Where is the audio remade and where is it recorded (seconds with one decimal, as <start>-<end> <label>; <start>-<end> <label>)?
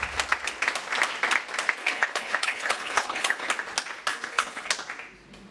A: 0.0-1.8 recorded; 1.8-3.5 remade; 3.5-4.1 recorded; 4.1-4.7 remade; 4.7-5.5 recorded